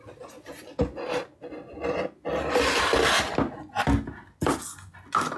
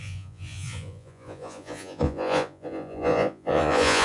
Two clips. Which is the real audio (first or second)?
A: first